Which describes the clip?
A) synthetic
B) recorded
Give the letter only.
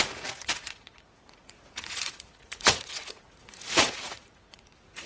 A